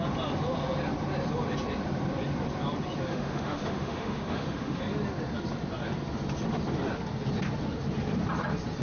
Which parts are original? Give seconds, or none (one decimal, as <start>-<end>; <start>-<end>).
0.0-3.1; 4.8-8.8